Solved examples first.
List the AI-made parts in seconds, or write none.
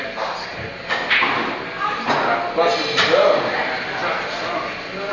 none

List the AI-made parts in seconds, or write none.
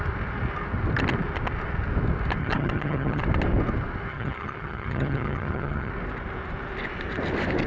2.4-3.2 (vocoder, HiFi-GAN); 4.1-5.9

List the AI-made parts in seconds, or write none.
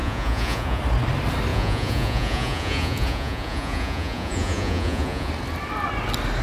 0.0-0.8 (vocoder, Vocos); 1.5-5.3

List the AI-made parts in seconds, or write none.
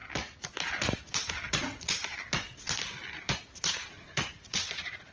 1.5-2.1 (vocoder, Vocos); 3.2-5.1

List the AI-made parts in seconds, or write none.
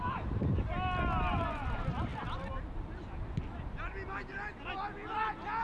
none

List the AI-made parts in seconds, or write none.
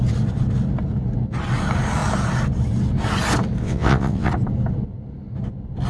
3.6-4.3 (vocoder, WaveNeXt)